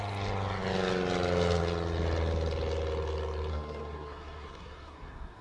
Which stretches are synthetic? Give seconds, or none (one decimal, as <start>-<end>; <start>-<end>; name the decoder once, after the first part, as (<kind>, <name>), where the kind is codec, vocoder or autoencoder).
3.5-5.4 (codec, SNAC)